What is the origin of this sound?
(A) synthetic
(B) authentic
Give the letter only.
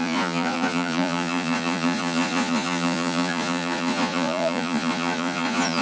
A